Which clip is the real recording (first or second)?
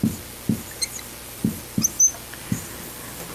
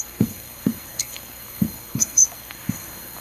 first